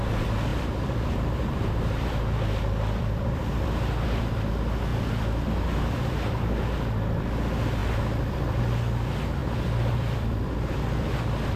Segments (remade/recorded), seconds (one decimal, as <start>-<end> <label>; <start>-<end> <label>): 0.0-0.5 recorded; 0.5-4.3 remade; 4.3-4.9 recorded; 4.9-6.4 remade; 6.4-7.8 recorded; 7.8-8.6 remade; 8.6-9.4 recorded; 9.4-11.2 remade; 11.2-11.6 recorded